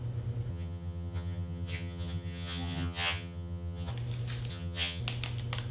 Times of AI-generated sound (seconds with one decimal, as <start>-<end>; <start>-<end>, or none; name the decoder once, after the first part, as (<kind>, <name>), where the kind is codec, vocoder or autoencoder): 0.5-3.9 (vocoder, HiFi-GAN); 4.5-5.0